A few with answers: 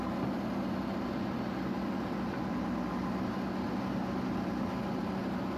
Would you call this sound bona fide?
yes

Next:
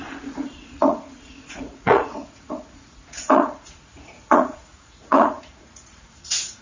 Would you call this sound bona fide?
no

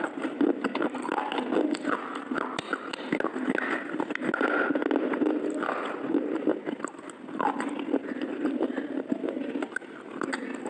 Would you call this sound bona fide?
yes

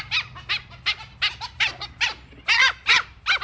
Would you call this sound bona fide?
yes